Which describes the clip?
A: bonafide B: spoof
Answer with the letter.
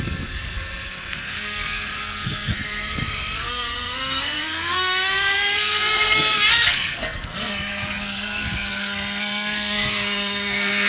B